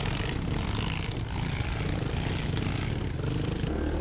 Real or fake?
real